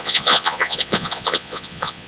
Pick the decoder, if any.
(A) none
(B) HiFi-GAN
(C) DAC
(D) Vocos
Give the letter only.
D